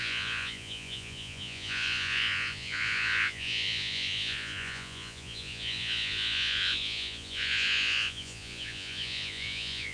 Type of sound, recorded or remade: remade